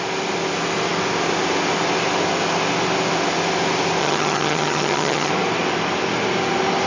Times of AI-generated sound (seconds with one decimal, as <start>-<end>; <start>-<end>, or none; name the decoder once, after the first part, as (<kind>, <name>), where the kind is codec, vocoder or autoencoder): 4.0-5.3 (vocoder, HiFi-GAN)